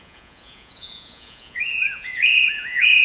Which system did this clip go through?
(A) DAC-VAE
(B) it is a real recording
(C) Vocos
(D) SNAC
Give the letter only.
C